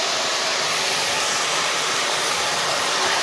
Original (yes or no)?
yes